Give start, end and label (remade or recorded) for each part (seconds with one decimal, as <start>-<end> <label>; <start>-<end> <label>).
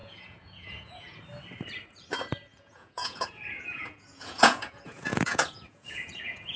0.0-1.2 remade; 1.2-2.5 recorded; 2.5-6.6 remade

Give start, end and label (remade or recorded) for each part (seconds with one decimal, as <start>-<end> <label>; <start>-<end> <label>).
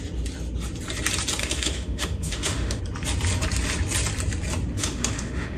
0.0-1.4 recorded; 1.4-2.8 remade; 2.8-4.8 recorded; 4.8-5.6 remade